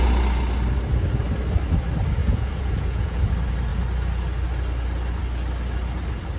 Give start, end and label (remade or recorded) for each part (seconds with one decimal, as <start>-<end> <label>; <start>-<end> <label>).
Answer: 0.0-2.2 recorded; 2.2-3.2 remade; 3.2-6.4 recorded